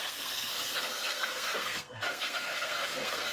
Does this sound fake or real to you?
fake